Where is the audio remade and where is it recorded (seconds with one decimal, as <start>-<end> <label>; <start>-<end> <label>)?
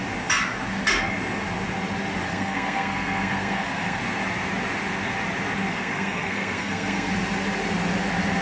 0.0-2.3 recorded; 2.3-4.0 remade; 4.0-5.7 recorded; 5.7-7.1 remade; 7.1-8.4 recorded